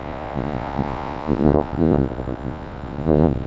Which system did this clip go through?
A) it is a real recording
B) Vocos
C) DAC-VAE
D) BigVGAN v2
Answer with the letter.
B